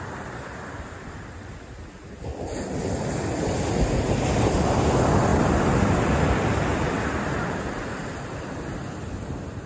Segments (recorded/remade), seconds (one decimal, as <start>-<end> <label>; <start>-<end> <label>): 0.0-9.7 recorded